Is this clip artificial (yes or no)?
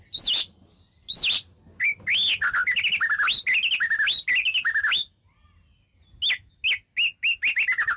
no